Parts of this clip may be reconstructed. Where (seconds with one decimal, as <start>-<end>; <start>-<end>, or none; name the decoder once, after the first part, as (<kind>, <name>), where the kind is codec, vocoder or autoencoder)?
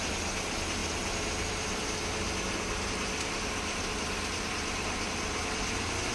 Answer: none